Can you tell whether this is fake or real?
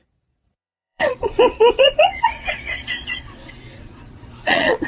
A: fake